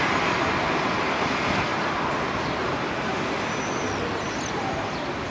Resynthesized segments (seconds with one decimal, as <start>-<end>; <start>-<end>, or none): none